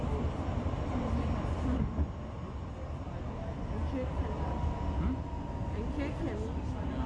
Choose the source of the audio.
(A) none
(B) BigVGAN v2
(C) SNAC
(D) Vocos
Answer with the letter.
A